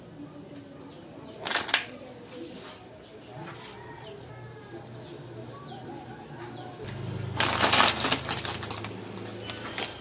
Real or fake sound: real